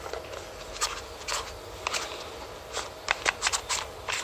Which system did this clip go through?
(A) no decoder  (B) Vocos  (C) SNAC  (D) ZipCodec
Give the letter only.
A